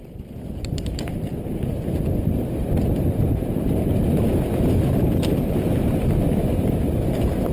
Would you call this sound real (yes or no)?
no